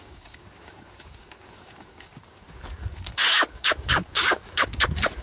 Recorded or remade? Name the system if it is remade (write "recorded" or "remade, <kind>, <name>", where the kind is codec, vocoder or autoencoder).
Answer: remade, codec, DAC